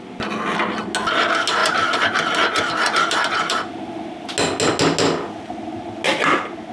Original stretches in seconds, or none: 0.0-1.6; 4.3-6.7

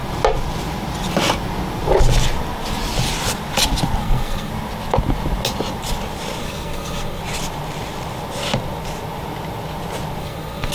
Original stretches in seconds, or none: 0.0-4.0; 4.5-6.4; 7.2-10.2

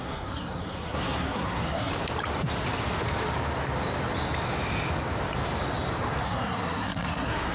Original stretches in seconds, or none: 1.9-6.2